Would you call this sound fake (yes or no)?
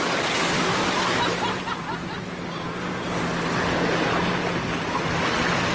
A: no